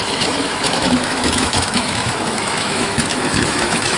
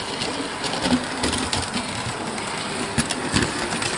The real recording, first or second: second